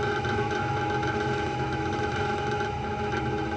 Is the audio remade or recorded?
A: remade